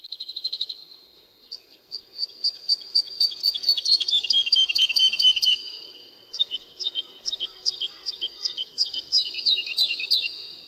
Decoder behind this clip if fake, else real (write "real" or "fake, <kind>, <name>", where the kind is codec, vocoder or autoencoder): fake, codec, SNAC